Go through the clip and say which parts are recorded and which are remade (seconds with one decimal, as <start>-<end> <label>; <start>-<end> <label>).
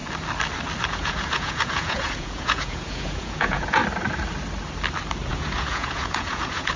0.0-0.8 recorded; 0.8-3.8 remade; 3.8-5.3 recorded; 5.3-6.8 remade